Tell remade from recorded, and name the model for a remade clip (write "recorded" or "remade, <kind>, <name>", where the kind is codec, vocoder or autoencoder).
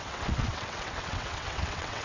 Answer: remade, vocoder, WaveNeXt